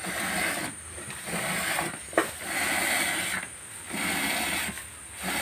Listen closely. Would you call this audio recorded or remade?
recorded